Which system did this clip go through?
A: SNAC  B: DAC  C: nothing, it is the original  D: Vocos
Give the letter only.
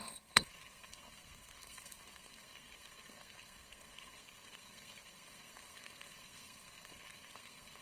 A